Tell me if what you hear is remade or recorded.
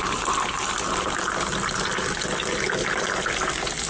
recorded